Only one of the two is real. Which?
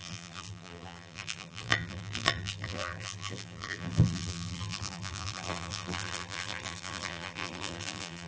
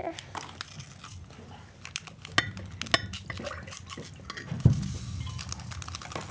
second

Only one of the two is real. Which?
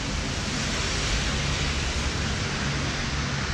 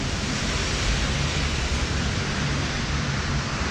first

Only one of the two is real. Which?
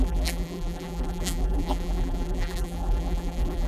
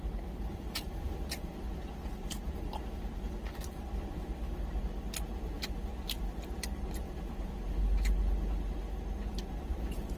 second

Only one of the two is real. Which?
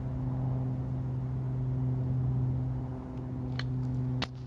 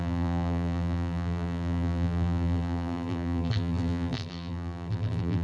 first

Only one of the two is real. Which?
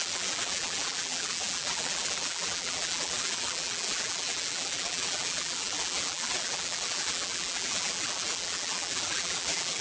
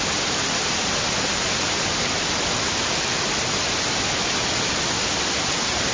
second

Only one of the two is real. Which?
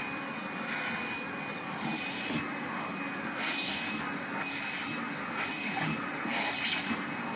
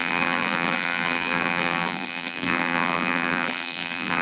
first